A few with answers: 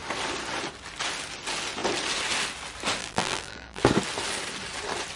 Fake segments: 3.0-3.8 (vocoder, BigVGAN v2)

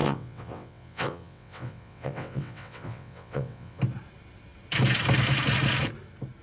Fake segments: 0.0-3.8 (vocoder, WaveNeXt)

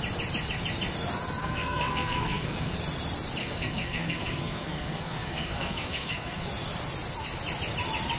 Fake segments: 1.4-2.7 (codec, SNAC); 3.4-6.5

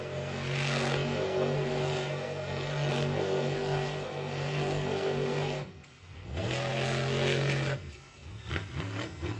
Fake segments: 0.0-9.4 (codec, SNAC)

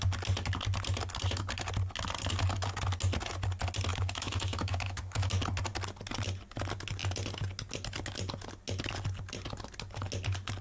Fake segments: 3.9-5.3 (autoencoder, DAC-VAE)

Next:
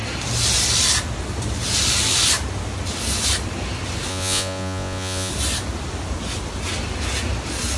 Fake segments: 4.1-5.3 (vocoder, Vocos)

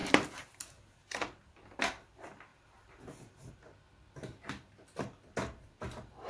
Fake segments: 0.0-0.8 (vocoder, BigVGAN v2); 2.5-3.5